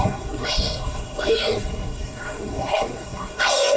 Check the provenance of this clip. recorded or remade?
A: remade